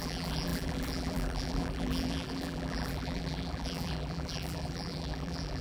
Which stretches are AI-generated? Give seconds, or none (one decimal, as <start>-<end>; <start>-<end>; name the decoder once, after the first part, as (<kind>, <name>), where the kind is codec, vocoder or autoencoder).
0.0-5.6 (vocoder, BigVGAN v2)